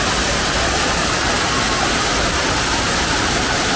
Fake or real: real